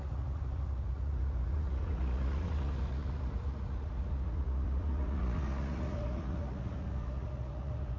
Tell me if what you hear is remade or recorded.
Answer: remade